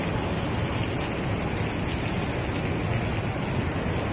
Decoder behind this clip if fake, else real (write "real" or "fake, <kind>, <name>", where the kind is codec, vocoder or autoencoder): real